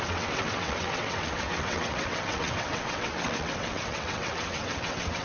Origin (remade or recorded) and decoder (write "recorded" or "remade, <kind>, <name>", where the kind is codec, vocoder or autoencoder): remade, vocoder, WaveNeXt